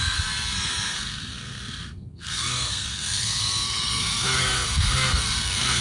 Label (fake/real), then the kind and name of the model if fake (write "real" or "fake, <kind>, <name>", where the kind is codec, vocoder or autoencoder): fake, codec, SNAC